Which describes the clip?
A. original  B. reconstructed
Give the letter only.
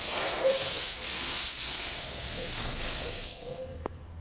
B